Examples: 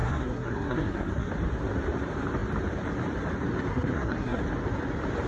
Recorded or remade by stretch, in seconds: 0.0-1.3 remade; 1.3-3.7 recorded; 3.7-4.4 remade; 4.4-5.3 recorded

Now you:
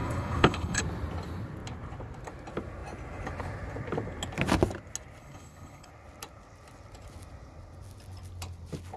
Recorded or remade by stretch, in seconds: 0.0-0.8 remade; 0.8-5.2 recorded; 5.2-5.9 remade; 5.9-9.0 recorded

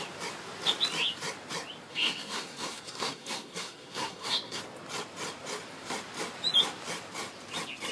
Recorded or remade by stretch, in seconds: 0.0-1.9 recorded; 1.9-4.6 remade; 4.6-7.9 recorded

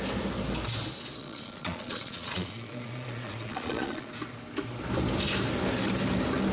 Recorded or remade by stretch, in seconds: 0.0-1.2 recorded; 1.2-4.1 remade; 4.1-6.5 recorded

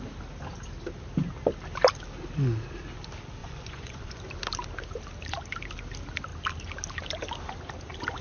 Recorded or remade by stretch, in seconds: 0.0-3.4 recorded; 3.4-4.2 remade; 4.2-8.2 recorded

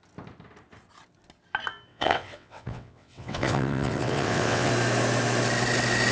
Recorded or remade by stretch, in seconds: 0.0-1.9 recorded; 1.9-4.7 remade; 4.7-6.1 recorded

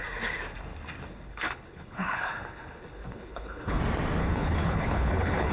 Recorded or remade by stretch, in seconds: 0.0-1.1 recorded; 1.1-3.8 remade; 3.8-4.2 recorded; 4.2-5.5 remade

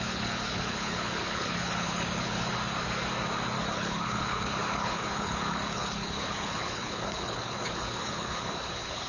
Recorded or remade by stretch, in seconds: 0.0-2.5 remade; 2.5-3.6 recorded; 3.6-9.1 remade